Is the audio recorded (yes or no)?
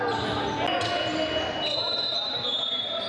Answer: yes